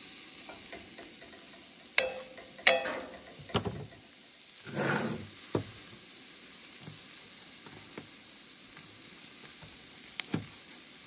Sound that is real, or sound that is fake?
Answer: real